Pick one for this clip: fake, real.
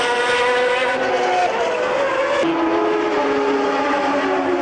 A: real